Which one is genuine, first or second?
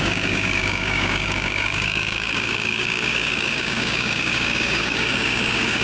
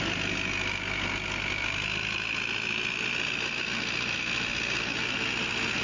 second